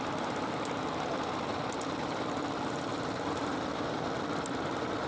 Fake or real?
real